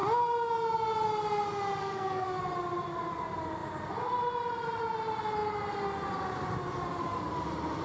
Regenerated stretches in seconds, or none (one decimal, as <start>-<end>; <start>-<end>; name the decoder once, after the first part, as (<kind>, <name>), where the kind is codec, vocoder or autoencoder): 1.8-2.4 (codec, SNAC)